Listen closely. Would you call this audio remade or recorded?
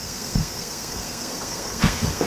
remade